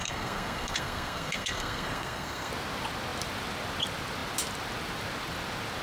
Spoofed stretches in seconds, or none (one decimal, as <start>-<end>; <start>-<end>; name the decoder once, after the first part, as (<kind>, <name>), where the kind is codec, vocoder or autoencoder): 0.0-2.5 (codec, SNAC)